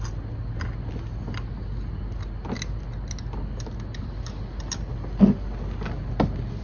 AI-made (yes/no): no